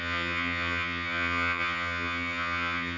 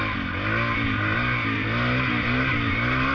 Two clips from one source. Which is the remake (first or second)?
first